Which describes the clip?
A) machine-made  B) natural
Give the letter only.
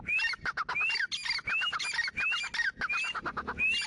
B